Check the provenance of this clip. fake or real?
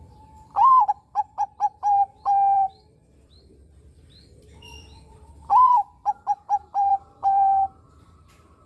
fake